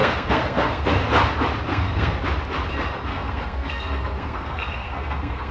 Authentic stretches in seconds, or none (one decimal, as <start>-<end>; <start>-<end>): 0.9-1.7; 2.2-3.1